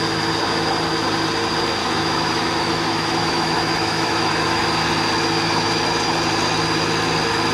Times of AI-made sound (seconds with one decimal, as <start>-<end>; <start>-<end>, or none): 1.8-4.6